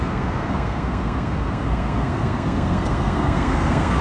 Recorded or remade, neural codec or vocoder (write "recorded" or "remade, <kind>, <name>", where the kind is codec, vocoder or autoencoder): remade, codec, SNAC